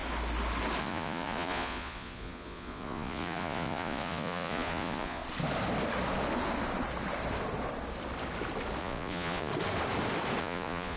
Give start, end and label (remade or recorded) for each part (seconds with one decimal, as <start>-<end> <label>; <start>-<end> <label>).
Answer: 0.0-0.8 recorded; 0.8-5.2 remade; 5.2-8.8 recorded; 8.8-9.5 remade; 9.5-10.4 recorded; 10.4-11.0 remade